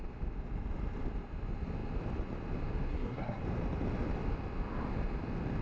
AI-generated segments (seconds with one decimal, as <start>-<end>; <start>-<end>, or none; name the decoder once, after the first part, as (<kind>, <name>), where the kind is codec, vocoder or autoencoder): 2.9-3.4 (codec, SNAC)